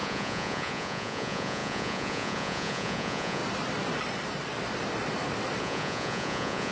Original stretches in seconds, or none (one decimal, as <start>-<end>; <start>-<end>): 3.4-5.6